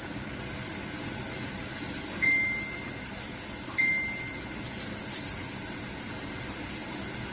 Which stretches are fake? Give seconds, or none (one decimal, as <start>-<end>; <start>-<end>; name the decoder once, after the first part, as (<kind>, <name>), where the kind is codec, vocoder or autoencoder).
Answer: none